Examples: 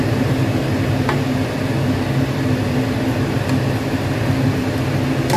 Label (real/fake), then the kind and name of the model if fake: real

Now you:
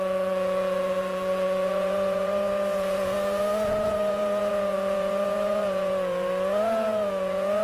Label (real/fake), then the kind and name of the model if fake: fake, vocoder, Vocos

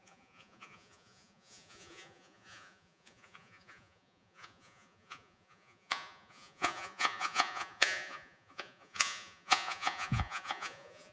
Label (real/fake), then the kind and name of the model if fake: fake, vocoder, Vocos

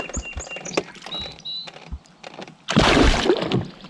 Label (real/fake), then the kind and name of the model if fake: real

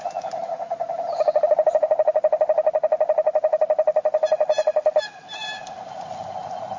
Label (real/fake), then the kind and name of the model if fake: real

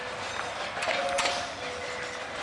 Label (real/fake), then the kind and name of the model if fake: real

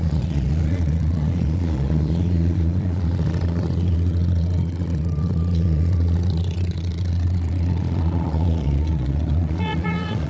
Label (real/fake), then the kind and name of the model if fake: fake, vocoder, Vocos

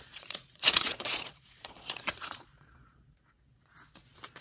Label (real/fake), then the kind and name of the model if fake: fake, vocoder, Vocos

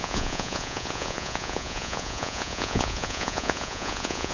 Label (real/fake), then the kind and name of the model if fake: fake, vocoder, Vocos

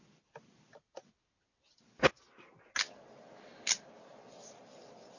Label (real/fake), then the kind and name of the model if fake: real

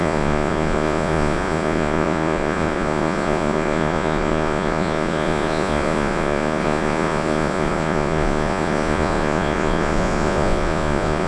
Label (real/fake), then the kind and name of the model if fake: fake, vocoder, Vocos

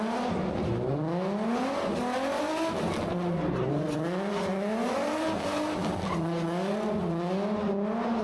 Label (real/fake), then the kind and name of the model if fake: real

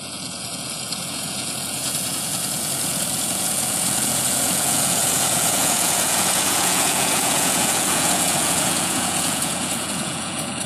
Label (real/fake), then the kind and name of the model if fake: fake, vocoder, Vocos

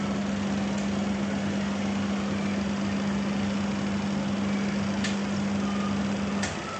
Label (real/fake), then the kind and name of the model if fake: real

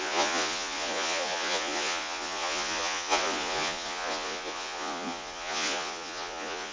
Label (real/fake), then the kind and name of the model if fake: fake, vocoder, Vocos